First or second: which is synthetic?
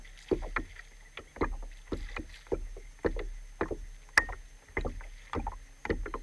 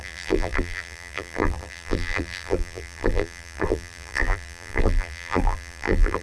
second